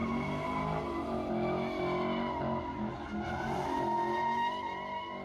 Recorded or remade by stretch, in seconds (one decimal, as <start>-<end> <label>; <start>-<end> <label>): 0.0-5.2 recorded